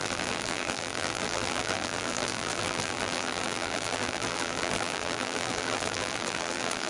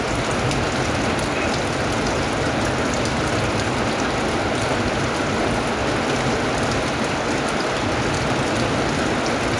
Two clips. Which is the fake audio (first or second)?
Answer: first